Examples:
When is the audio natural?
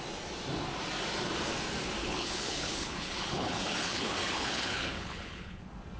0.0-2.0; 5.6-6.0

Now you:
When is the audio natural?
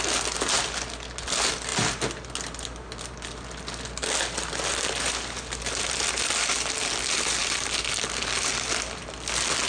0.0-9.7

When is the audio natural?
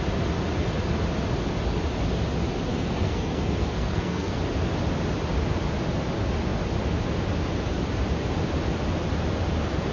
0.0-2.7; 4.4-9.9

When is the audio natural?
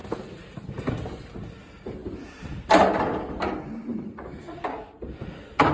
0.0-2.0; 3.5-3.9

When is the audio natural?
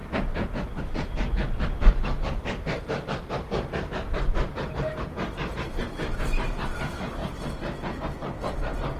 0.0-0.8; 1.4-5.0; 7.2-9.0